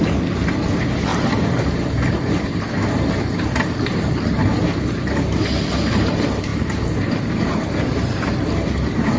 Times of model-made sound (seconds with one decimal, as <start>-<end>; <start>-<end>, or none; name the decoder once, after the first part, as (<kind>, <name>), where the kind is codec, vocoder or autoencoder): 1.1-1.6 (vocoder, BigVGAN v2); 3.9-4.5; 6.5-7.6